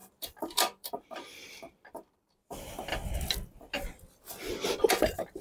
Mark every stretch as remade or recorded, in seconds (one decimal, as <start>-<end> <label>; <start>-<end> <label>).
0.0-2.3 remade; 2.3-5.4 recorded